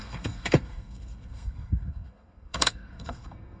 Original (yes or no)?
no